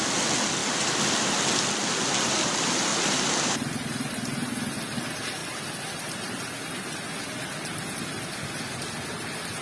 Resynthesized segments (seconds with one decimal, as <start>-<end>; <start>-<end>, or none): 0.6-1.3; 2.9-4.1; 5.4-6.1